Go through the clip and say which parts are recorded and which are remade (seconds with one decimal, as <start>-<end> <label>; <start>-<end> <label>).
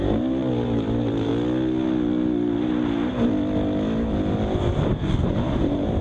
0.0-1.3 remade; 1.3-4.9 recorded; 4.9-6.0 remade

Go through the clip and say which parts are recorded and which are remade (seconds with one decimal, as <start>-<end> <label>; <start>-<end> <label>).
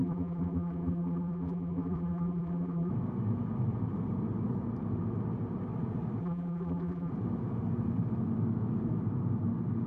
0.0-2.9 remade; 2.9-6.2 recorded; 6.2-7.1 remade; 7.1-9.9 recorded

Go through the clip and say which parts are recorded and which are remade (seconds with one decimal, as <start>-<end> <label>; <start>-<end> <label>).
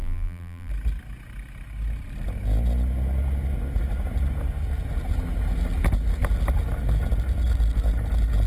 0.0-0.7 remade; 0.7-8.5 recorded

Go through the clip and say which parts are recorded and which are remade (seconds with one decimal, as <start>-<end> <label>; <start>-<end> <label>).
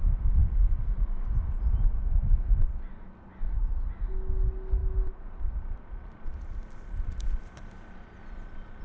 0.0-0.4 recorded; 0.4-1.2 remade; 1.2-8.8 recorded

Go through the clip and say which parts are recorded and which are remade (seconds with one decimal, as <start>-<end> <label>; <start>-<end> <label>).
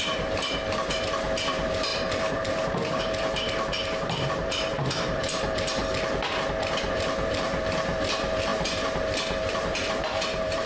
0.0-5.8 remade; 5.8-6.6 recorded; 6.6-10.7 remade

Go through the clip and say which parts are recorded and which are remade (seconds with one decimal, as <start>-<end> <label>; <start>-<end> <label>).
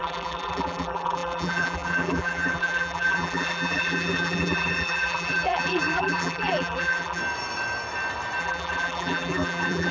0.0-7.2 remade; 7.2-8.4 recorded; 8.4-9.9 remade